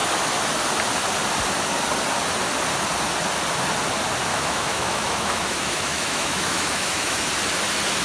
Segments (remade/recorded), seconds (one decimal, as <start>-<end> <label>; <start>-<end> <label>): 0.0-4.3 recorded; 4.3-7.3 remade; 7.3-8.0 recorded